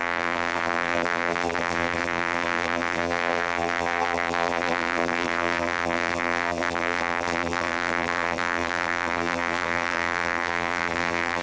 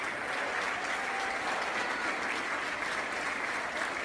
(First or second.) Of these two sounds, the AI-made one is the first